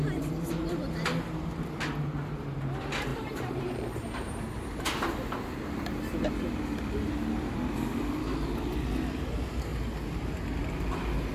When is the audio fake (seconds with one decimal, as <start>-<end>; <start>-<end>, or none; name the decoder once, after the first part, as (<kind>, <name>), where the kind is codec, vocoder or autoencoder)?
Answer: 3.1-3.8 (vocoder, BigVGAN v2)